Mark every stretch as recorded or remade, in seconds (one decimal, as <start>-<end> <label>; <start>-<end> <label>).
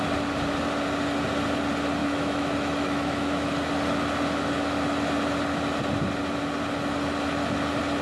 0.0-2.0 recorded; 2.0-3.5 remade; 3.5-8.0 recorded